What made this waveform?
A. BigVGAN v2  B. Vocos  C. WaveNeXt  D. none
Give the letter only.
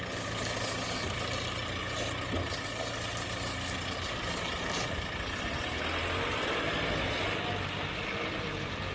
D